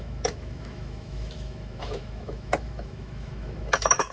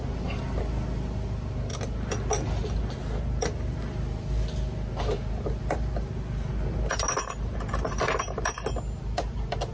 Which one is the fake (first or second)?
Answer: first